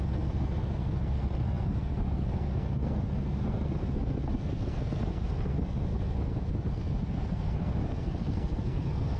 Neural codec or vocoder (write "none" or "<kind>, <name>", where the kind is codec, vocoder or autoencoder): codec, SNAC